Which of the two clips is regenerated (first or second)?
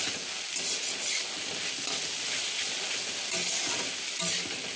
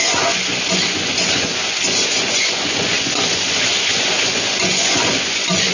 second